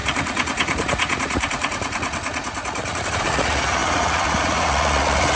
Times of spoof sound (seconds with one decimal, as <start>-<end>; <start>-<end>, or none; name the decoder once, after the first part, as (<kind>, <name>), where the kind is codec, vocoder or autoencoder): 0.0-5.4 (vocoder, Vocos)